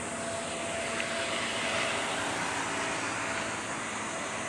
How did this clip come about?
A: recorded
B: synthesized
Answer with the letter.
A